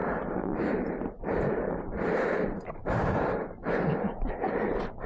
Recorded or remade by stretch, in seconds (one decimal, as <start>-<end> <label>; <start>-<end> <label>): 0.0-3.1 remade; 3.1-4.1 recorded; 4.1-5.1 remade